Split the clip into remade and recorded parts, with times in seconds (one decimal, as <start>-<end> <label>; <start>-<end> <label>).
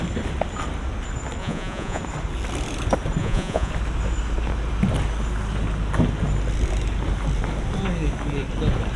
0.0-1.4 recorded; 1.4-2.0 remade; 2.0-3.2 recorded; 3.2-3.7 remade; 3.7-9.0 recorded